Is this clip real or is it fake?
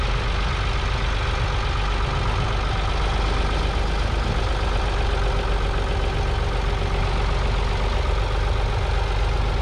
real